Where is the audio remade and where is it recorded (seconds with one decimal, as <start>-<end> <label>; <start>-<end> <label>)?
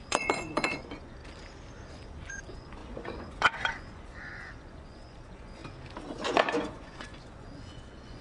0.0-1.2 remade; 1.2-1.9 recorded; 1.9-5.6 remade; 5.6-6.1 recorded; 6.1-8.2 remade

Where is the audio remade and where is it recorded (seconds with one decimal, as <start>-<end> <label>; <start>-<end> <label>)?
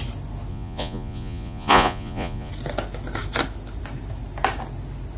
0.0-0.5 recorded; 0.5-2.5 remade; 2.5-5.2 recorded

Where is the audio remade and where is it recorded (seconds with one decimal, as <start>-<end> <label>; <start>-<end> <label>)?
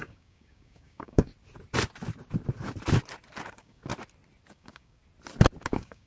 0.0-1.3 remade; 1.3-3.5 recorded; 3.5-3.9 remade; 3.9-4.5 recorded; 4.5-5.0 remade; 5.0-5.6 recorded; 5.6-6.1 remade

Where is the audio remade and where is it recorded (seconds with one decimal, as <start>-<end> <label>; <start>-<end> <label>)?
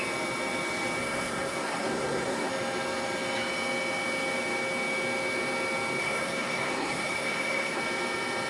0.0-1.0 recorded; 1.0-2.5 remade; 2.5-6.0 recorded; 6.0-7.8 remade; 7.8-8.5 recorded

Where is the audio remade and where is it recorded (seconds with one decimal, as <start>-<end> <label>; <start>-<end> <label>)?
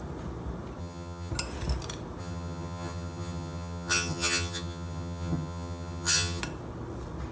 0.0-0.8 recorded; 0.8-1.3 remade; 1.3-2.2 recorded; 2.2-6.4 remade; 6.4-7.3 recorded